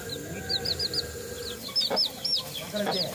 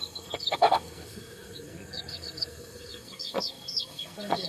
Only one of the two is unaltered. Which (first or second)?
first